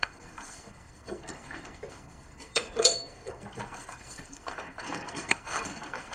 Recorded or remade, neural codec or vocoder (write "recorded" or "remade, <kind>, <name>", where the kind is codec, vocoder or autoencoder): remade, codec, SNAC